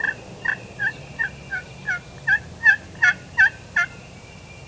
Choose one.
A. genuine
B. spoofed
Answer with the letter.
A